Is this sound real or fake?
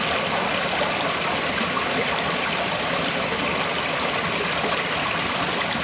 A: real